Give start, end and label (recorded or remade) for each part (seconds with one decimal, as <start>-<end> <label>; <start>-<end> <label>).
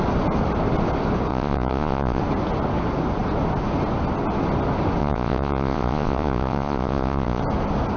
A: 0.0-1.3 recorded; 1.3-2.2 remade; 2.2-5.0 recorded; 5.0-7.4 remade; 7.4-8.0 recorded